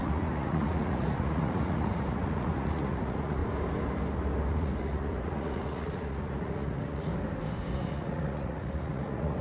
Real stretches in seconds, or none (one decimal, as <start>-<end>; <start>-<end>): 3.4-4.5; 7.1-7.7